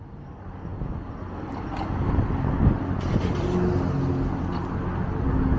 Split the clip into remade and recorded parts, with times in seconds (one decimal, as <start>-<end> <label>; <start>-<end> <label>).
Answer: 0.0-5.6 recorded